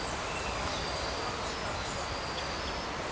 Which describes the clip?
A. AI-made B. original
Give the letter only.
B